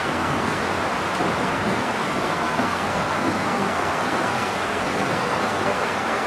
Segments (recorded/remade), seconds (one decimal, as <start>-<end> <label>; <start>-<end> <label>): 0.0-0.6 remade; 0.6-1.4 recorded; 1.4-6.3 remade

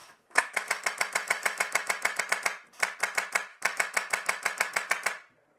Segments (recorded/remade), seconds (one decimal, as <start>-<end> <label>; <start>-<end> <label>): 0.0-2.2 remade; 2.2-3.5 recorded; 3.5-4.9 remade; 4.9-5.6 recorded

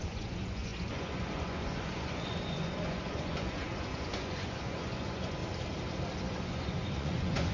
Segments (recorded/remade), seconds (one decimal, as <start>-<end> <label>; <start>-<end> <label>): 0.0-5.4 remade; 5.4-6.2 recorded; 6.2-7.5 remade